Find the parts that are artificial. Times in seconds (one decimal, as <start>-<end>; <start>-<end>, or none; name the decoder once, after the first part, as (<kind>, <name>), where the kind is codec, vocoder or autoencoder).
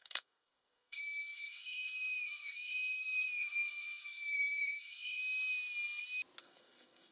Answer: 0.0-5.2 (codec, SNAC); 6.4-7.1